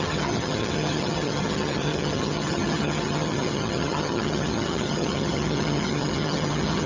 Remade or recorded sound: remade